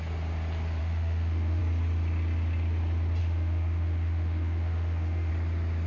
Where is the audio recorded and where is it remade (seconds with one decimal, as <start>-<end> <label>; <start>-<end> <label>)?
0.0-0.8 recorded; 0.8-1.6 remade; 1.6-3.2 recorded; 3.2-5.3 remade; 5.3-5.9 recorded